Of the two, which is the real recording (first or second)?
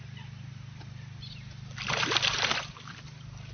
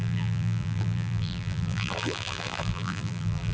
first